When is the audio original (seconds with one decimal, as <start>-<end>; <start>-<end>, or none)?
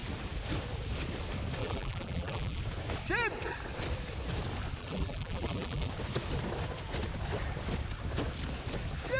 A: 0.0-1.6; 2.6-4.8; 5.9-9.2